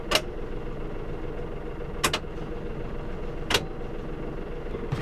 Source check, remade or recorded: recorded